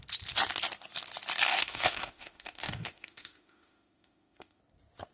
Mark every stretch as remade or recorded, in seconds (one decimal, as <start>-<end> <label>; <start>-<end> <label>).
0.0-1.5 recorded; 1.5-4.6 remade; 4.6-5.1 recorded